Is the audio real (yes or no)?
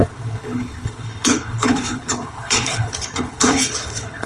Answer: no